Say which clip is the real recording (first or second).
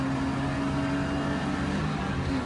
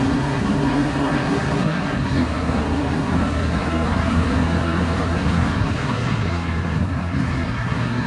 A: first